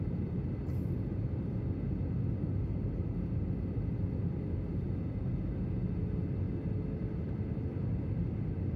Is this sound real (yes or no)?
yes